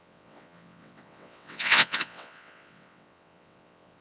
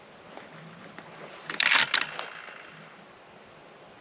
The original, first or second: second